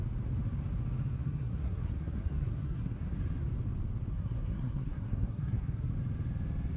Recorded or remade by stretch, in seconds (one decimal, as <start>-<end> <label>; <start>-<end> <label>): 0.0-1.1 recorded; 1.1-3.2 remade; 3.2-4.1 recorded; 4.1-5.9 remade; 5.9-6.8 recorded

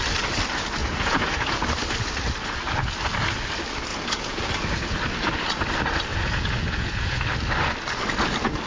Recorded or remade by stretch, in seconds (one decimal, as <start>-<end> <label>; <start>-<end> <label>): 0.0-0.8 recorded; 0.8-1.6 remade; 1.6-3.9 recorded; 3.9-4.5 remade; 4.5-6.1 recorded; 6.1-7.2 remade; 7.2-8.7 recorded

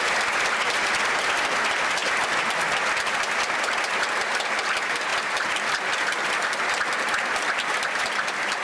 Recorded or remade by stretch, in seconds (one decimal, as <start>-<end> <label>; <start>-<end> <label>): 0.0-8.6 recorded

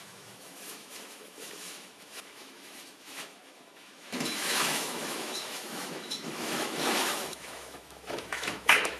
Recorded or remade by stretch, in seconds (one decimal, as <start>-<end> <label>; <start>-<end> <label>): 0.0-9.0 remade

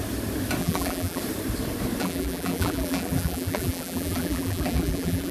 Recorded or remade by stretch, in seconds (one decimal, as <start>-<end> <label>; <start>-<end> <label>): 0.0-0.6 recorded; 0.6-1.2 remade; 1.2-2.0 recorded; 2.0-5.3 remade

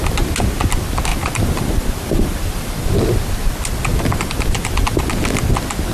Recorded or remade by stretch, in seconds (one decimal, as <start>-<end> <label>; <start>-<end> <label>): 0.0-1.1 recorded; 1.1-2.9 remade; 2.9-3.9 recorded; 3.9-4.7 remade; 4.7-5.9 recorded

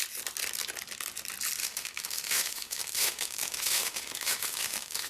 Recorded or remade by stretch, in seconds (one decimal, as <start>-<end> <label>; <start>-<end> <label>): 0.0-1.6 recorded; 1.6-5.1 remade

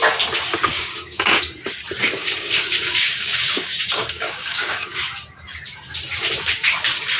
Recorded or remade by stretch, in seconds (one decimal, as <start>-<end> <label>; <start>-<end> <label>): 0.0-0.7 recorded; 0.7-1.4 remade; 1.4-2.2 recorded; 2.2-5.0 remade; 5.0-7.2 recorded